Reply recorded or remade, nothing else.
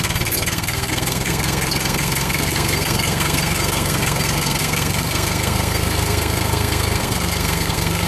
remade